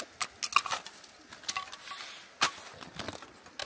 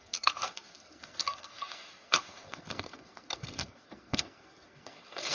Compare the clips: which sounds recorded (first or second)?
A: first